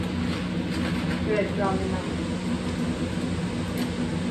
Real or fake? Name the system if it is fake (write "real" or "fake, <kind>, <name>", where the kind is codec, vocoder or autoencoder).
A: real